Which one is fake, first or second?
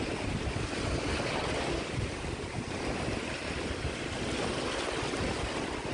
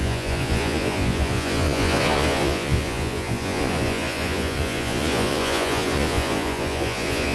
second